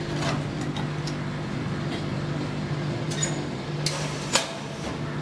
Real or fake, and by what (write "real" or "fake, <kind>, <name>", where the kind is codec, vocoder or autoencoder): real